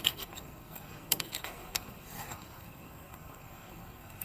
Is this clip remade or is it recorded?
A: remade